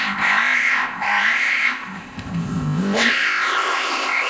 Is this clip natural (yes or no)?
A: no